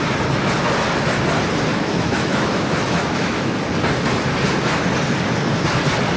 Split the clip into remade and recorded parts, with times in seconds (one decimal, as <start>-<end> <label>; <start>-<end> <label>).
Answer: 0.0-1.7 recorded; 1.7-3.6 remade; 3.6-6.2 recorded